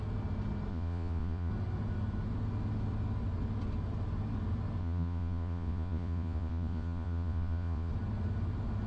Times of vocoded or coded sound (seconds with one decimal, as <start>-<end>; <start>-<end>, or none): 0.7-1.5; 4.8-7.9